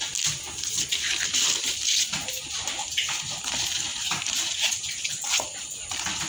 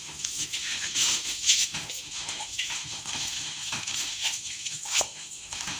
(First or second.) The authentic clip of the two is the first